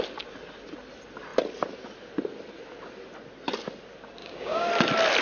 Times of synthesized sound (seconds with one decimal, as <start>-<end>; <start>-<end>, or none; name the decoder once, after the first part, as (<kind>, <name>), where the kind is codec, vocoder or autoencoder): 4.2-4.7 (codec, DAC)